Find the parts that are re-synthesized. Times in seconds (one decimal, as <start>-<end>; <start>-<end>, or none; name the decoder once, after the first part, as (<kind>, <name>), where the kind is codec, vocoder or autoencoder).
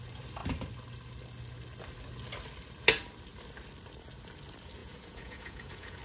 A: 4.8-6.0 (vocoder, Vocos)